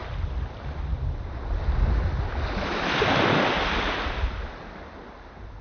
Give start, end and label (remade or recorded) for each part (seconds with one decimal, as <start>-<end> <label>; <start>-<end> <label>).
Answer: 0.0-5.6 recorded